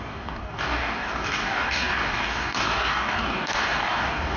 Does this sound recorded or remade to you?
remade